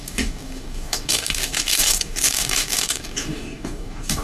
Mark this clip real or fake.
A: fake